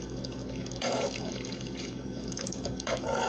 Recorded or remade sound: remade